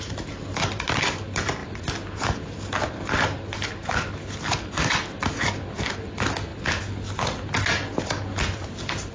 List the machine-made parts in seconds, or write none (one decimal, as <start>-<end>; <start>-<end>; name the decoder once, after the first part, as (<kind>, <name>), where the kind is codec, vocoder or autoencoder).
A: none